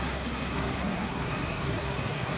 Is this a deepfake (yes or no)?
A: yes